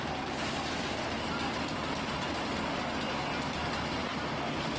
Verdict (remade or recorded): recorded